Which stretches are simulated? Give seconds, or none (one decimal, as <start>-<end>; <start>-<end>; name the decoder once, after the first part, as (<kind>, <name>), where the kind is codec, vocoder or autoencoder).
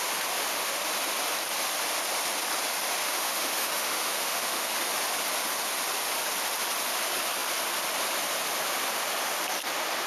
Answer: 0.4-0.9 (autoencoder, DAC-VAE); 3.0-4.9